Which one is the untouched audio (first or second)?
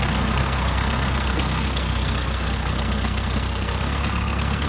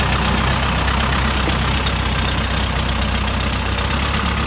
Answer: second